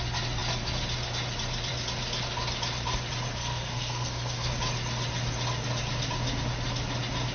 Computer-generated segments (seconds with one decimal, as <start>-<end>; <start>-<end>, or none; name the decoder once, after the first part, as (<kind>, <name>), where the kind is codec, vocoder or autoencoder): 3.4-4.5 (codec, SNAC)